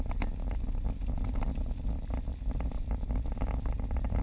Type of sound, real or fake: real